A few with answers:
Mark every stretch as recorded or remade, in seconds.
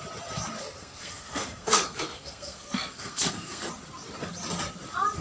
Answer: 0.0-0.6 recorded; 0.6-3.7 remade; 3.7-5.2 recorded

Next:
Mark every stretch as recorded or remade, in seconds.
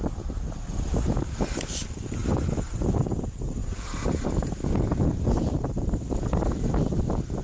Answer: 0.0-7.4 recorded